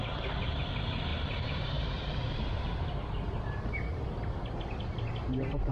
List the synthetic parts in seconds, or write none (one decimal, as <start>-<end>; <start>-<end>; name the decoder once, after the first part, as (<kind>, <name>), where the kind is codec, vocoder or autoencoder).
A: 1.1-4.5 (vocoder, BigVGAN v2)